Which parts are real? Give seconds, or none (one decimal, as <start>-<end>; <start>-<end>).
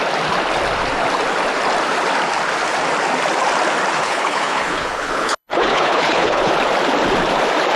0.0-4.0; 6.5-7.8